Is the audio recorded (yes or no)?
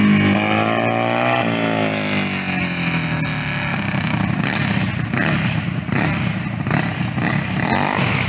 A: yes